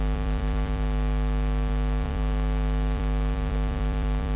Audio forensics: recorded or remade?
remade